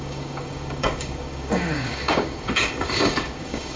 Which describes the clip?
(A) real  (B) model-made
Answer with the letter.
B